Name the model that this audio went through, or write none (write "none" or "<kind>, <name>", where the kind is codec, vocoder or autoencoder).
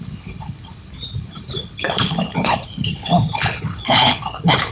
codec, HILCodec